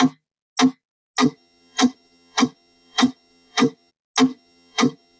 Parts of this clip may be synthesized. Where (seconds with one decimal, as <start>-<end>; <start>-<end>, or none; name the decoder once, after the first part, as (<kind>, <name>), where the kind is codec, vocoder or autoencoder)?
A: 1.2-3.9 (vocoder, HiFi-GAN); 4.3-5.2